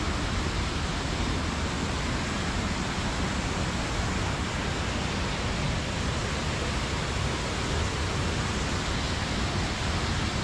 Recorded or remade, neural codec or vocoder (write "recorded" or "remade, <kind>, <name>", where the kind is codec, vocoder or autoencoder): recorded